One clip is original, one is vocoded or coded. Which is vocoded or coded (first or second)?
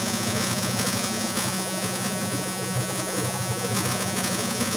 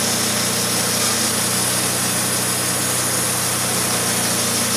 first